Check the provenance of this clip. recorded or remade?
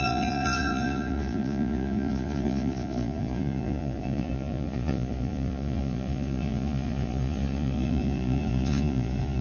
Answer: remade